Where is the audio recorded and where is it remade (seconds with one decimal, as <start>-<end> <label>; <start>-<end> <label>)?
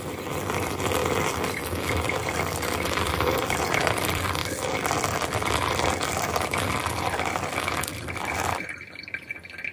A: 0.0-4.4 remade; 4.4-8.6 recorded; 8.6-9.7 remade